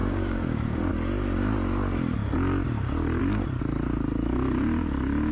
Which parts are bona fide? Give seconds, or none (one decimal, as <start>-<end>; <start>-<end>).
0.9-5.3